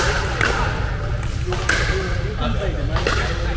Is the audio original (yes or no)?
yes